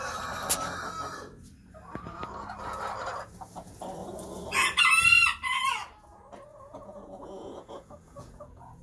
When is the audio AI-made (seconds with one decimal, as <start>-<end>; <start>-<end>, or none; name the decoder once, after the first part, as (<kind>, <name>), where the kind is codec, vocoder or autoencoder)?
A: 6.5-8.8 (vocoder, Vocos)